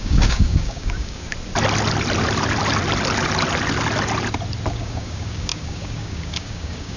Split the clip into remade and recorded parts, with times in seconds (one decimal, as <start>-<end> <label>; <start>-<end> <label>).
0.0-1.3 remade; 1.3-4.7 recorded; 4.7-7.0 remade